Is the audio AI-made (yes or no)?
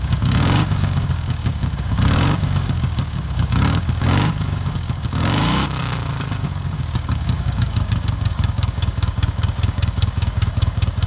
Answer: yes